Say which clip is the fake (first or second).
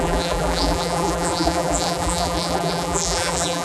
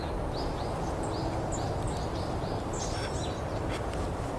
first